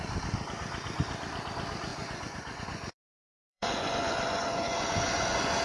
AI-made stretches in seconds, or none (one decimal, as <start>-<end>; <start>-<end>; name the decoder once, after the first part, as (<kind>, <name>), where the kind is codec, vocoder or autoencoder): 1.9-5.6 (vocoder, Vocos)